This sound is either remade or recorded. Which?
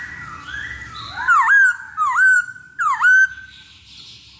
recorded